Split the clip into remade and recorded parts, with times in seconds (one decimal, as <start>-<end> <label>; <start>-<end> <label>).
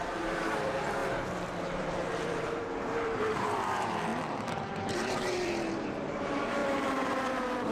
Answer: 0.0-4.1 remade; 4.1-4.7 recorded; 4.7-7.7 remade